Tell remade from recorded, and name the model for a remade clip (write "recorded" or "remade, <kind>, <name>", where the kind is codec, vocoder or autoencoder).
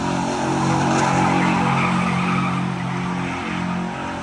recorded